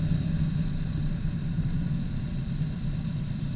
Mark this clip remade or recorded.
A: recorded